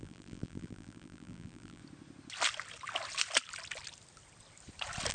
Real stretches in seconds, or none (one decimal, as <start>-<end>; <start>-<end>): 1.8-5.1